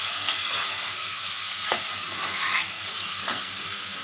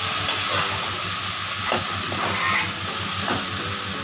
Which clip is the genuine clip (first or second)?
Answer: second